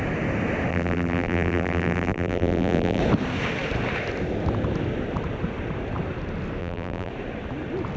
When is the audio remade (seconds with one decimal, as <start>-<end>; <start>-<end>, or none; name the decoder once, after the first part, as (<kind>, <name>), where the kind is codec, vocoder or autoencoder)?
0.7-3.0 (vocoder, BigVGAN v2); 6.6-7.1